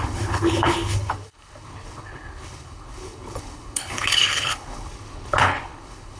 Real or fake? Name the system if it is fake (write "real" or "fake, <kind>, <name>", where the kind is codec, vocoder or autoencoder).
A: fake, codec, HILCodec